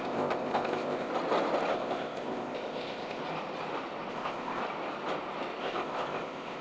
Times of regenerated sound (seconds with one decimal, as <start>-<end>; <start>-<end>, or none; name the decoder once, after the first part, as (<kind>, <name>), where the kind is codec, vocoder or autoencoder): 0.0-1.1 (codec, ZipCodec); 1.7-3.2; 4.1-4.6; 5.6-6.6